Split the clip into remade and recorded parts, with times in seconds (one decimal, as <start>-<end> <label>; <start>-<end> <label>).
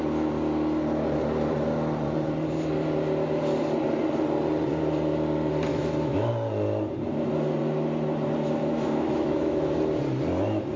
0.0-5.7 recorded; 5.7-6.3 remade; 6.3-8.6 recorded; 8.6-9.7 remade; 9.7-10.8 recorded